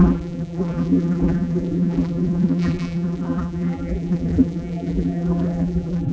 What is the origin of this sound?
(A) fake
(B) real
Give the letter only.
A